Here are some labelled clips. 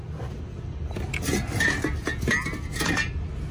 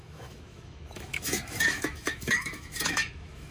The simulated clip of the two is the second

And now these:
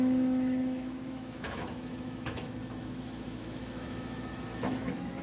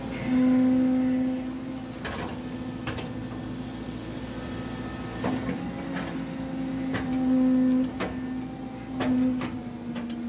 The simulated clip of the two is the first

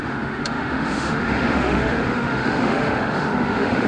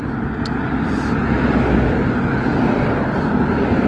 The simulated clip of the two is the first